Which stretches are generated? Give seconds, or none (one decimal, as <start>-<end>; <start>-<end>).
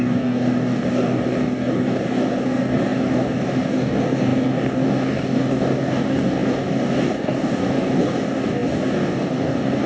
0.0-9.9